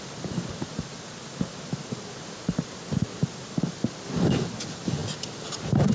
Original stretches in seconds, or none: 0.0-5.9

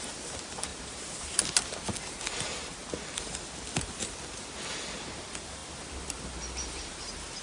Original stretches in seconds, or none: 0.0-0.7; 1.4-7.4

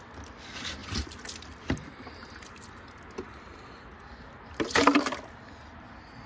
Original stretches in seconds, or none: 0.0-6.3

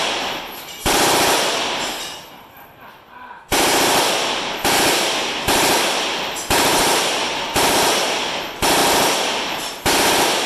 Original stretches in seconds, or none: 0.0-10.5